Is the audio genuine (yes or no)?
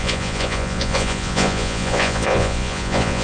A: no